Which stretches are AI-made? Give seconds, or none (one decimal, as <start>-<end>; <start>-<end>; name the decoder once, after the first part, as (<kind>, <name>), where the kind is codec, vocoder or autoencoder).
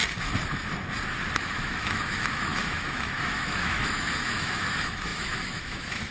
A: 1.4-6.1 (autoencoder, DAC-VAE)